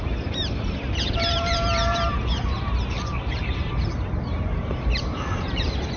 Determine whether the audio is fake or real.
fake